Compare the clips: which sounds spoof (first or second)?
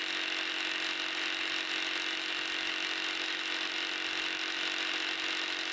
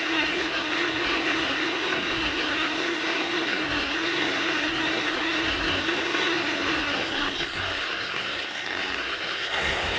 second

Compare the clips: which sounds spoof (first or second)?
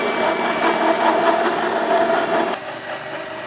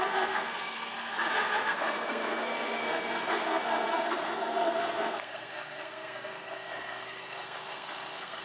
second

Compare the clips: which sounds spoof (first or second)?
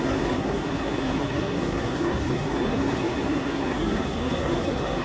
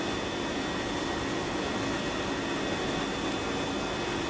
first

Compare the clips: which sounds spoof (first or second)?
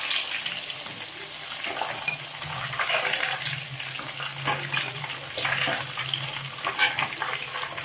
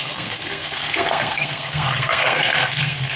second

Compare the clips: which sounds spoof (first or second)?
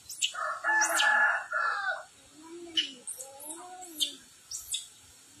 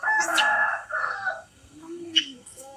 second